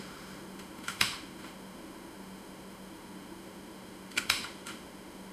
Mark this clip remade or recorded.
remade